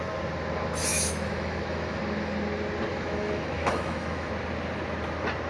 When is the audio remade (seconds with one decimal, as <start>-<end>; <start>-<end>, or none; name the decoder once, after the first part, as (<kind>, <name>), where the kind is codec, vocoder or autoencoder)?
0.9-2.0 (autoencoder, DAC-VAE); 2.9-4.3